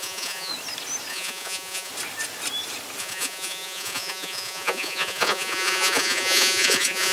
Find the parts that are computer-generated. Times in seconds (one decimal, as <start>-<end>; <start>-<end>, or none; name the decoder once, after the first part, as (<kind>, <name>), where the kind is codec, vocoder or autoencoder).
0.0-0.5 (vocoder, Vocos); 1.1-1.9; 3.0-7.1